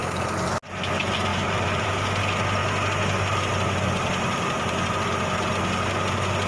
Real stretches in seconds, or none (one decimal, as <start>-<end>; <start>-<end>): 0.0-1.3; 1.9-6.5